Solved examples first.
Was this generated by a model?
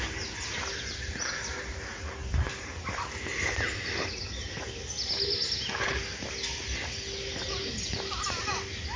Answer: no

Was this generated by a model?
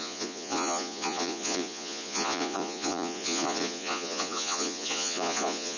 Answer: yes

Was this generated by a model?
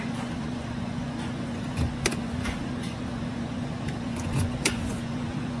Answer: yes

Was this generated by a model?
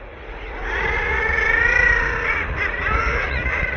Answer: yes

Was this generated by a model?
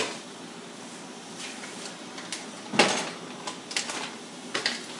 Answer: no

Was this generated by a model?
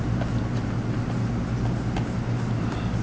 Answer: no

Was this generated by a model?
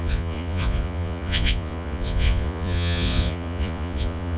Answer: yes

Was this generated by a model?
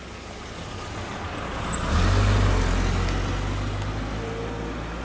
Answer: no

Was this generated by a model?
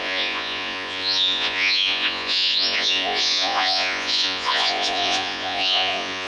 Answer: yes